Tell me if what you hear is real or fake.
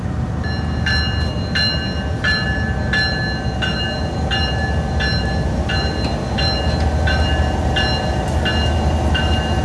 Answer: real